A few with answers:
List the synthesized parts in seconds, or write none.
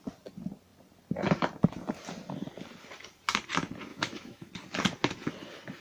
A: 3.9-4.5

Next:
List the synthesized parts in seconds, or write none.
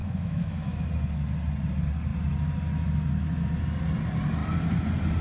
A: 0.0-0.9